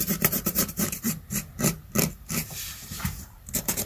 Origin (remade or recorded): remade